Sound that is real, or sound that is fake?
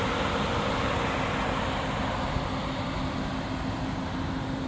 real